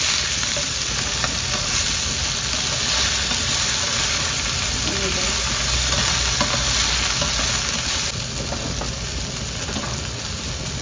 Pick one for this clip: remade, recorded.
recorded